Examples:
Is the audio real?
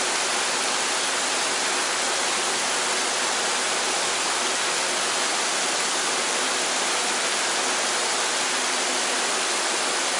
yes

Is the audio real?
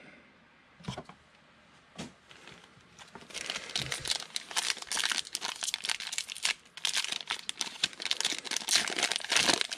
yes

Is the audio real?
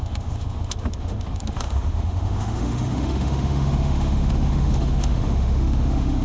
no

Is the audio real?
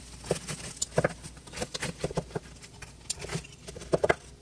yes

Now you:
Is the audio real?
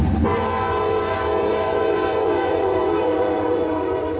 no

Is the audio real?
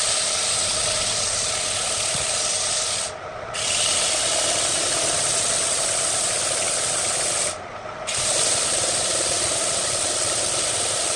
yes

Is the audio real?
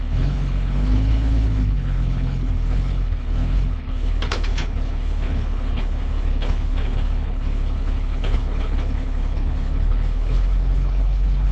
no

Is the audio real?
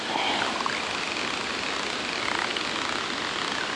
yes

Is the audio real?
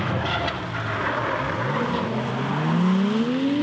yes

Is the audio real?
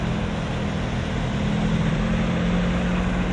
yes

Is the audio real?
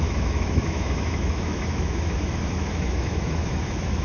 no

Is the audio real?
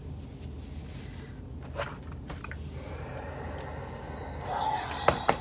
yes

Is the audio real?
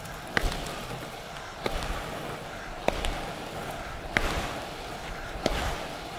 yes